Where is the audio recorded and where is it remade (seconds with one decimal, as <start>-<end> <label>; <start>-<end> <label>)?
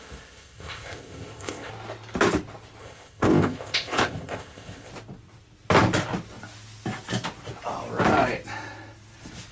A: 0.0-1.7 remade; 1.7-2.8 recorded; 2.8-4.9 remade; 4.9-9.5 recorded